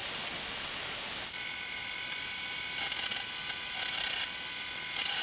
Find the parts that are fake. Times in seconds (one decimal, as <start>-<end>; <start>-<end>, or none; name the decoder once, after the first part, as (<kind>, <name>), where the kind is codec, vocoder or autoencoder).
0.0-0.8 (vocoder, BigVGAN v2); 1.8-2.4; 3.1-4.2